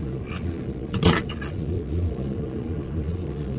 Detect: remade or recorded remade